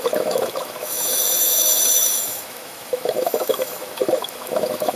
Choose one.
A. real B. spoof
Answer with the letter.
B